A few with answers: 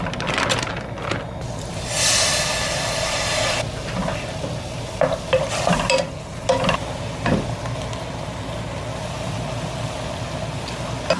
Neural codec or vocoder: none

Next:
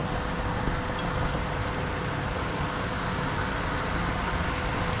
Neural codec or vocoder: none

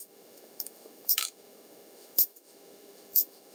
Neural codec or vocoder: autoencoder, DAC-VAE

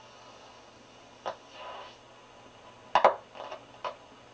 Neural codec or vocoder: none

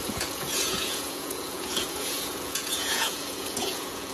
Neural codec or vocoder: vocoder, Vocos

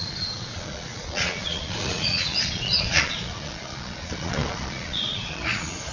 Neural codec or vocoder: vocoder, Vocos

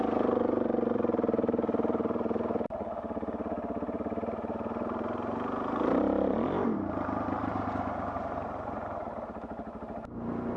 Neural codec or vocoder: vocoder, BigVGAN v2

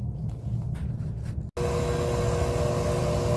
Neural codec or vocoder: none